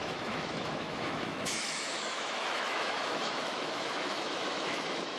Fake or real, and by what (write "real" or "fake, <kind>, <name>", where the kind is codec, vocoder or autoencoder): fake, autoencoder, DAC-VAE